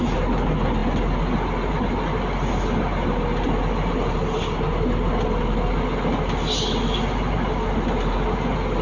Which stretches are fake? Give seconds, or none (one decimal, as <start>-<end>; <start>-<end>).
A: none